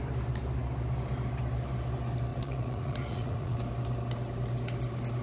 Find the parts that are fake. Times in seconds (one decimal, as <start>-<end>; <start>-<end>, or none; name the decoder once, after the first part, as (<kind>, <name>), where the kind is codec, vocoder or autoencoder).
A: 2.3-3.6 (vocoder, Vocos)